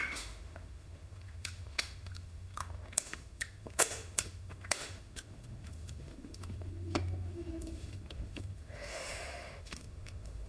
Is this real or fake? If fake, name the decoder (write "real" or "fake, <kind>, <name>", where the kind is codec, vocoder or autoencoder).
fake, autoencoder, DAC-VAE